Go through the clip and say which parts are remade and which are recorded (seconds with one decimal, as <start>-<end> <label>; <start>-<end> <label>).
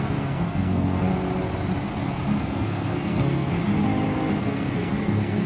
0.0-1.1 remade; 1.1-2.4 recorded; 2.4-3.6 remade; 3.6-4.4 recorded; 4.4-5.5 remade